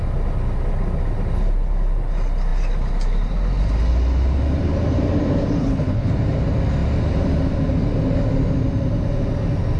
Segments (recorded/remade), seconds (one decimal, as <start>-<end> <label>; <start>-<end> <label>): 0.0-5.6 recorded; 5.6-6.1 remade; 6.1-9.8 recorded